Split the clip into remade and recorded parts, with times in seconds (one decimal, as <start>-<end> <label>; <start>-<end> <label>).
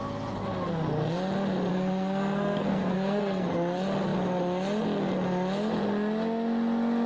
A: 0.0-1.7 recorded; 1.7-3.5 remade; 3.5-7.1 recorded